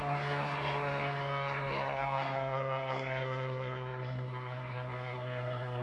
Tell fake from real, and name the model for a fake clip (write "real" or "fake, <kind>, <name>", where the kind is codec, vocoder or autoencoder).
fake, codec, SNAC